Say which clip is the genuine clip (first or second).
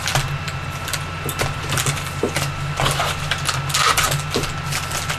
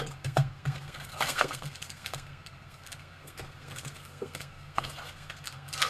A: first